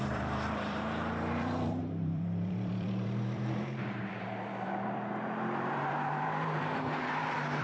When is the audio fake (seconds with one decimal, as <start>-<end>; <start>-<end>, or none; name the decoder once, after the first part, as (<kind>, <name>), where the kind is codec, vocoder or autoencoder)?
0.0-7.6 (vocoder, BigVGAN v2)